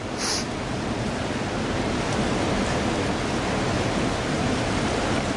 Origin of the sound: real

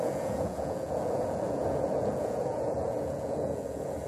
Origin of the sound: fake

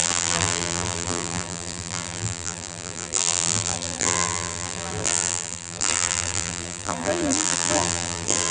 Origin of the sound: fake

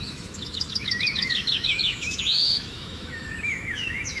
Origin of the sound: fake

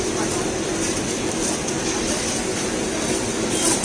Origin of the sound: real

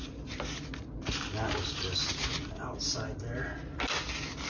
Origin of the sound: real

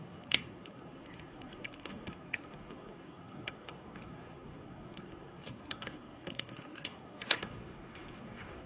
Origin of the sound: fake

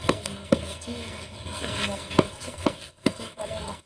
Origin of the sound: fake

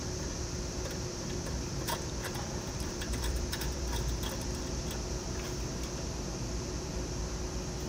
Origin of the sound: fake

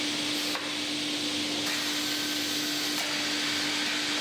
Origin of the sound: real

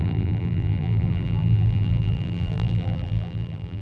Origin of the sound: fake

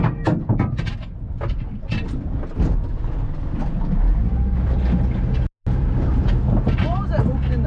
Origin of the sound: real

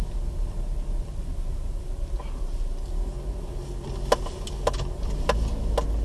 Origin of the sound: real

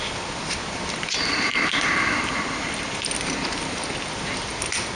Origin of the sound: real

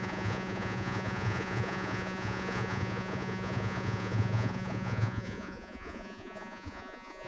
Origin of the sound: fake